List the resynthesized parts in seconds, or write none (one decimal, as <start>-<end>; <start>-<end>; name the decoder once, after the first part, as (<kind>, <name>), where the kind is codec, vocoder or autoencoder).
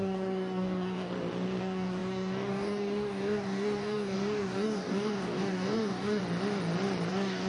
0.0-1.1 (codec, DAC); 1.6-6.2; 7.1-7.5